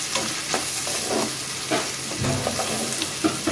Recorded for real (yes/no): yes